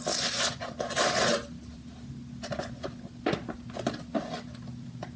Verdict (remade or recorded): recorded